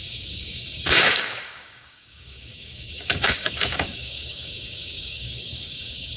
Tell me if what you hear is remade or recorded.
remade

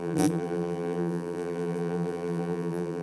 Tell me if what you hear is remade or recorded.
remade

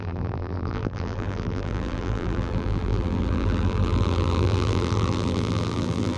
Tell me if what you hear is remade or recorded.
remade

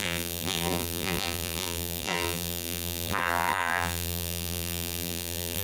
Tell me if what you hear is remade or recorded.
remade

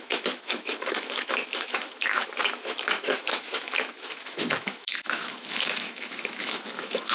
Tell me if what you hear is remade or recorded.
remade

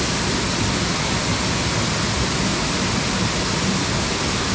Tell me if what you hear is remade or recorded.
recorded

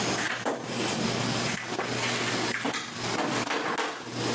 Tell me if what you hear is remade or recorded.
recorded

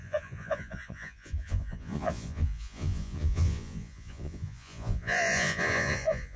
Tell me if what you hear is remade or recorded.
remade